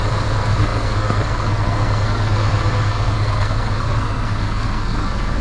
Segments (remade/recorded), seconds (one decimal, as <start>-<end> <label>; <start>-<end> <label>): 0.0-5.4 remade